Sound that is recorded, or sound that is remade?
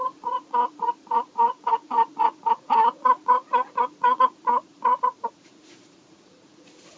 remade